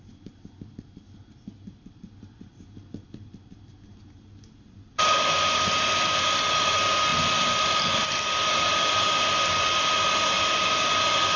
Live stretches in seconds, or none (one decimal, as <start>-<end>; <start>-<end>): 0.0-11.4